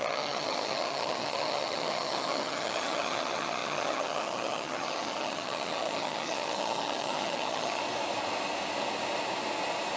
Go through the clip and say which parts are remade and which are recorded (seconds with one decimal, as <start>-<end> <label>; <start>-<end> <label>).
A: 0.0-7.8 remade; 7.8-10.0 recorded